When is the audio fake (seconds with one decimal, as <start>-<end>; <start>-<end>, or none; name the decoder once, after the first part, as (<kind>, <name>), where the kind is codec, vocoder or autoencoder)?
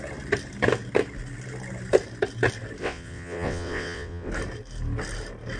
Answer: 2.8-4.3 (vocoder, WaveNeXt)